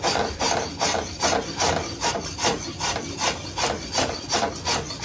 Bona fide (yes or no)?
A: yes